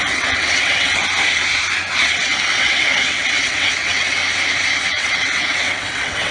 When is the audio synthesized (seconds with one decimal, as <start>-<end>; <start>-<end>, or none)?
0.0-1.0; 1.9-4.2; 4.8-6.3